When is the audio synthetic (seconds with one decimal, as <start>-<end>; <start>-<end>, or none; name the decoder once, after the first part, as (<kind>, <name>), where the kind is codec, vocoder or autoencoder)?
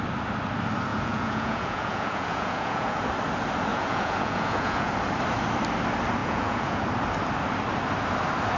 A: 0.9-3.0 (vocoder, Vocos); 3.7-4.9; 6.2-6.8